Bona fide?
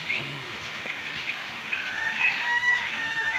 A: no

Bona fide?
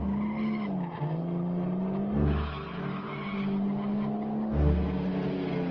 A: yes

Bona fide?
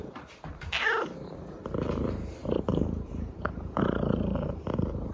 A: no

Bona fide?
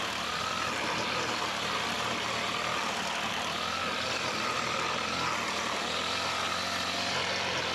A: yes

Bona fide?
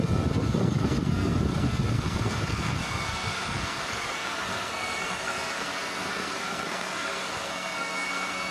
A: no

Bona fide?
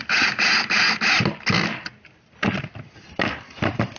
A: yes